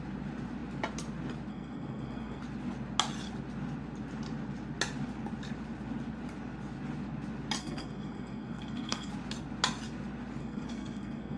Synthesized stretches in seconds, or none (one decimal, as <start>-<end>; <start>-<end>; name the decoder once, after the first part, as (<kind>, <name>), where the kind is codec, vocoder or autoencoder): 1.5-2.4 (codec, SNAC); 7.6-9.1; 10.4-11.4